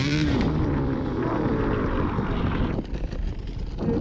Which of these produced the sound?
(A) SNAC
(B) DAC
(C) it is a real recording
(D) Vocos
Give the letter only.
C